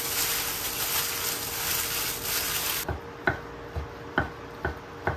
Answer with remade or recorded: recorded